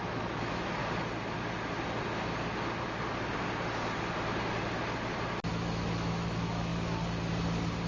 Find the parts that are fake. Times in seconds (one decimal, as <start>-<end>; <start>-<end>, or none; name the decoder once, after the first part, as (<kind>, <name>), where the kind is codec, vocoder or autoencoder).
0.0-0.8 (autoencoder, DAC-VAE); 5.5-6.7